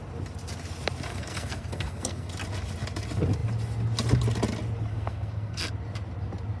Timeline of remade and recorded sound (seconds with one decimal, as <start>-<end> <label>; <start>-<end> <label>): 0.0-1.1 recorded; 1.1-2.3 remade; 2.3-4.9 recorded; 4.9-5.7 remade; 5.7-6.6 recorded